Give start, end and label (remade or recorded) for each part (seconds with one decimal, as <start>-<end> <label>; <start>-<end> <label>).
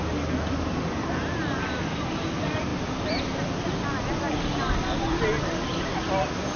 0.0-6.6 recorded